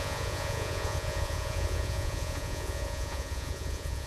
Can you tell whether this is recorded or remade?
remade